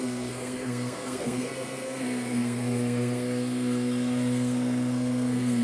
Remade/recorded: remade